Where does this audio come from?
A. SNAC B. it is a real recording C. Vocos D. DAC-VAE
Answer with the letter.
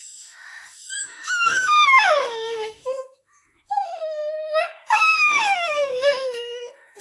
D